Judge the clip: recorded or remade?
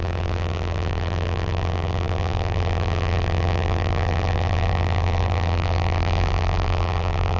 remade